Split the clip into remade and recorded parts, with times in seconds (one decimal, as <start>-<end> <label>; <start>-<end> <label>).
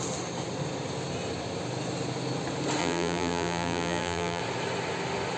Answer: 0.0-2.8 recorded; 2.8-4.4 remade; 4.4-5.4 recorded